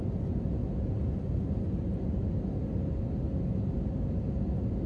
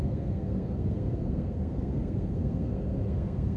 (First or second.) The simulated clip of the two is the second